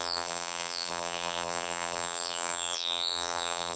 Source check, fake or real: fake